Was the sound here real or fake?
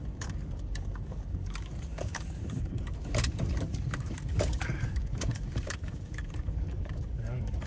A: fake